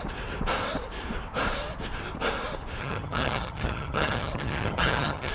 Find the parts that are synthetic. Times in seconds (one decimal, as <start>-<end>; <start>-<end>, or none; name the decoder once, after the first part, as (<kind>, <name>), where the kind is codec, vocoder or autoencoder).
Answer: 2.8-5.3 (vocoder, HiFi-GAN)